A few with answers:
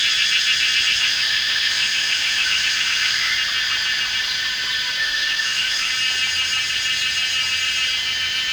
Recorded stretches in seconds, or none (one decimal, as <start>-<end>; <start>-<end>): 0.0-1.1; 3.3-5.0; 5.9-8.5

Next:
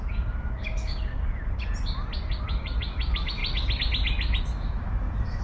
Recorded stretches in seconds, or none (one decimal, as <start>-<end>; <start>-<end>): 1.1-2.4; 3.4-4.4

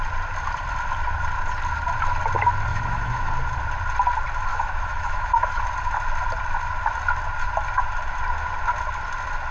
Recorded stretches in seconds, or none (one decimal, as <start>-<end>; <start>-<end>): 0.0-2.7; 3.3-4.5; 5.6-9.5